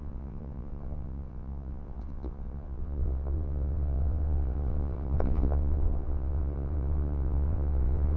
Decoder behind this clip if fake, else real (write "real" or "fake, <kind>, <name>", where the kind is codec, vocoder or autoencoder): fake, vocoder, WaveNeXt